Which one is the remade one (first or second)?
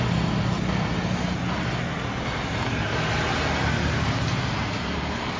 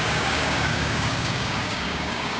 second